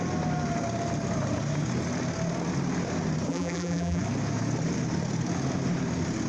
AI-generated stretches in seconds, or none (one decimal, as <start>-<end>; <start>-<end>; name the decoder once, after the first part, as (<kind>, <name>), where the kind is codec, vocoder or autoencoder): 3.3-4.0 (vocoder, BigVGAN v2)